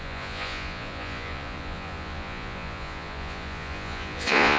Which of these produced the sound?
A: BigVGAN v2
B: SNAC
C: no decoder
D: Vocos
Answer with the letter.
D